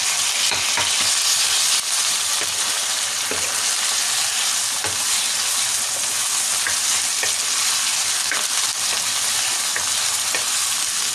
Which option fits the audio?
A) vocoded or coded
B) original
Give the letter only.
B